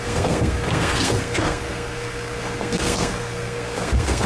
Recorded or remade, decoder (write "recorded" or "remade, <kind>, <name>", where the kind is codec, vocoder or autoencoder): remade, codec, SNAC